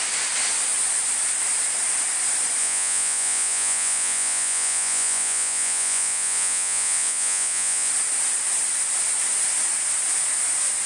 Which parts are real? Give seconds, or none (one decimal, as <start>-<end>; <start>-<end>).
0.0-2.6; 7.9-10.9